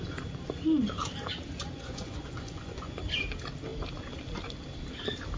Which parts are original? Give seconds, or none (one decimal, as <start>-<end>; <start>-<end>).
0.0-1.6; 3.0-5.4